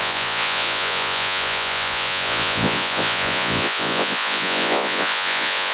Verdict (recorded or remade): remade